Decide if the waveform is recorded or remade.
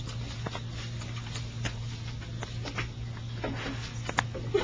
recorded